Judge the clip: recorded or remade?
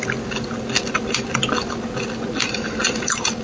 recorded